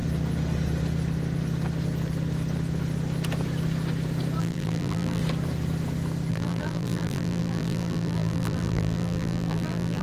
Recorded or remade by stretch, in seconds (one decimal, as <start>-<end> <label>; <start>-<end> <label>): 0.0-4.4 recorded; 4.4-5.2 remade; 5.2-6.3 recorded; 6.3-10.0 remade